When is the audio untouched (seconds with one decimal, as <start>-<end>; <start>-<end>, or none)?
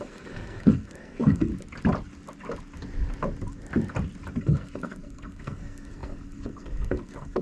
1.5-4.4